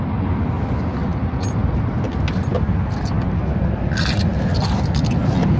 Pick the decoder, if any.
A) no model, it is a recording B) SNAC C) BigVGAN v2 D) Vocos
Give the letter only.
A